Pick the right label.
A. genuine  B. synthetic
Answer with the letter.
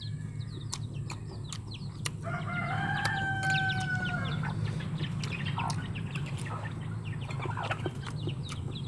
A